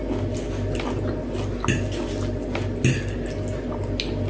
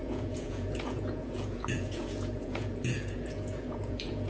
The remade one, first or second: second